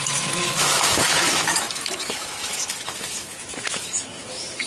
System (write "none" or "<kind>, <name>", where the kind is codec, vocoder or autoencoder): autoencoder, DAC-VAE